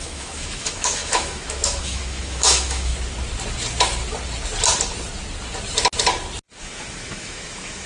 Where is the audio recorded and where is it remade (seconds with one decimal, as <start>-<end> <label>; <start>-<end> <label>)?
0.0-2.9 remade; 2.9-6.6 recorded; 6.6-7.9 remade